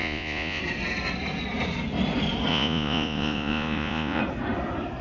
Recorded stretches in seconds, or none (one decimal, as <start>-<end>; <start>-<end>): 0.6-2.5; 4.2-5.0